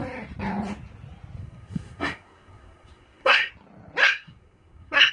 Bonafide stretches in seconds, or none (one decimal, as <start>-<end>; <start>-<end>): 0.0-1.4; 3.5-4.0